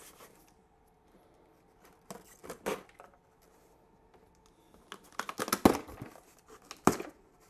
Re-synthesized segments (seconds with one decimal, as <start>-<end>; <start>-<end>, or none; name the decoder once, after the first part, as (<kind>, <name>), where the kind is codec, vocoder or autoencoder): none